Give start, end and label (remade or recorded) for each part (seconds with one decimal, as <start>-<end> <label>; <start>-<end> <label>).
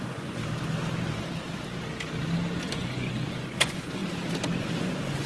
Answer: 0.0-0.4 remade; 0.4-2.6 recorded; 2.6-4.0 remade; 4.0-4.6 recorded; 4.6-5.3 remade